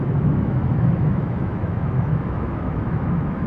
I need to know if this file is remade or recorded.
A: remade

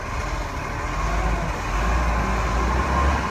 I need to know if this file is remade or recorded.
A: recorded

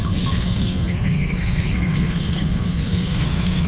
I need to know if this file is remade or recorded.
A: remade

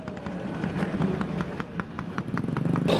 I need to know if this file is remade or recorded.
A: recorded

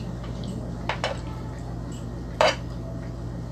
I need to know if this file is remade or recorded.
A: recorded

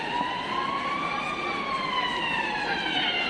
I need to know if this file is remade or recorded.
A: remade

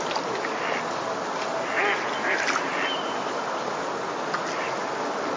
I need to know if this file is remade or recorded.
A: recorded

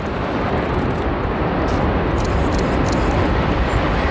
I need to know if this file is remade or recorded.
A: recorded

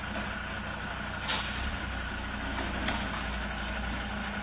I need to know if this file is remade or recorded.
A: recorded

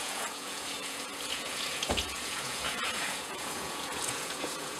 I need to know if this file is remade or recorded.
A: remade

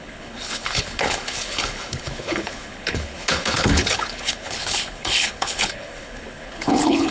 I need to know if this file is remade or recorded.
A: remade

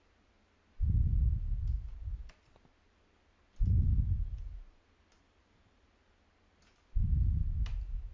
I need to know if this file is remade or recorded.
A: recorded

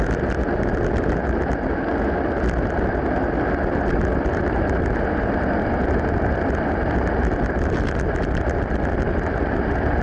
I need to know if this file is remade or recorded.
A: recorded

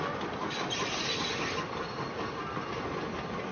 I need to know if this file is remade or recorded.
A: recorded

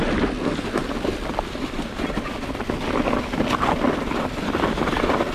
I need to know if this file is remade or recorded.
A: recorded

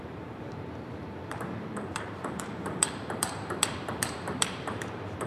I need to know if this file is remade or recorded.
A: remade